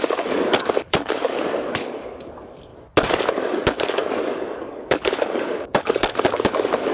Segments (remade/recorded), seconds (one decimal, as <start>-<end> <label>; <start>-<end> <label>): 0.0-2.7 remade; 2.7-3.3 recorded; 3.3-6.9 remade